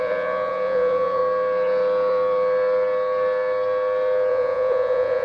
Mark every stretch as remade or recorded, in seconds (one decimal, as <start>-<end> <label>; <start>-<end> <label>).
0.0-1.2 remade; 1.2-4.3 recorded; 4.3-5.2 remade